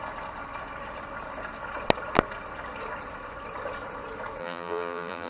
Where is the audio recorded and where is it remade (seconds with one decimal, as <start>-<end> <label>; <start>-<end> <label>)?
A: 0.0-4.4 recorded; 4.4-5.3 remade